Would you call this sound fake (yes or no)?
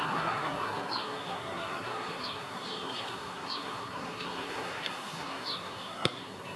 yes